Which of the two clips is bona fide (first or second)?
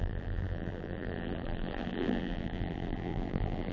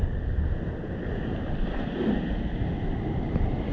second